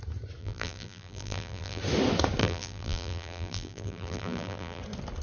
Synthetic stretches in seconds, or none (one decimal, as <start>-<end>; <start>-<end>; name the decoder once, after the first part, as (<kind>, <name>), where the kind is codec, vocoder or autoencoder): 0.4-1.8 (vocoder, BigVGAN v2); 2.4-4.8